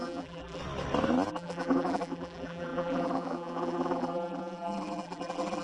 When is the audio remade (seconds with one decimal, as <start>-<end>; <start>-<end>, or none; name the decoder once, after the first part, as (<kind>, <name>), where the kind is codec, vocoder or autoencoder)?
0.0-0.6 (vocoder, BigVGAN v2); 1.3-5.6